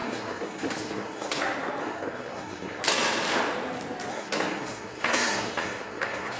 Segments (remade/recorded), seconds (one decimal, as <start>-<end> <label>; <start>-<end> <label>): 0.0-1.4 remade; 1.4-1.8 recorded; 1.8-2.8 remade; 2.8-4.1 recorded; 4.1-6.4 remade